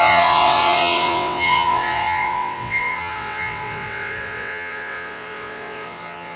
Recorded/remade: remade